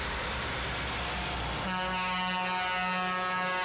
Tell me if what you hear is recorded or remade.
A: recorded